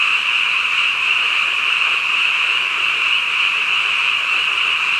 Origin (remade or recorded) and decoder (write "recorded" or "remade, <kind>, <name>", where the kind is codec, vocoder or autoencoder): remade, vocoder, BigVGAN v2